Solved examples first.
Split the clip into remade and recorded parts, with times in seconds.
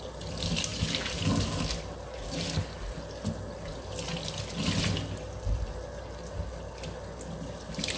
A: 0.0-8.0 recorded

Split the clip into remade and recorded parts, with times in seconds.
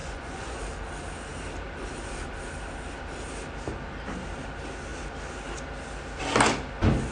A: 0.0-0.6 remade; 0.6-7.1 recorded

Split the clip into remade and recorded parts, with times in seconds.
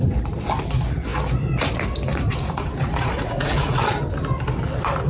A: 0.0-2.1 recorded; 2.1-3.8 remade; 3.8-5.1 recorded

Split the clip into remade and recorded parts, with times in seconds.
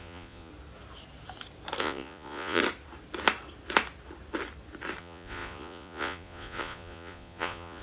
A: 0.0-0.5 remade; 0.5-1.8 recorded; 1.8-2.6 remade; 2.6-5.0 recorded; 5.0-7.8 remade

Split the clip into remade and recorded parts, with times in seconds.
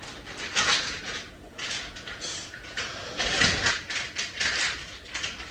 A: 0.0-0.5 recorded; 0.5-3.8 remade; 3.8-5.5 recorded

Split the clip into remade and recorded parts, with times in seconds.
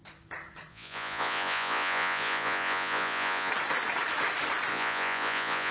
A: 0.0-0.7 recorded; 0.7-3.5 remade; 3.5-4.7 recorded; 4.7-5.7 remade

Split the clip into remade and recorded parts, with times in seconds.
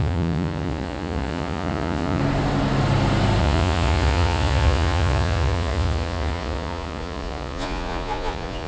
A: 0.0-2.2 remade; 2.2-3.4 recorded; 3.4-8.7 remade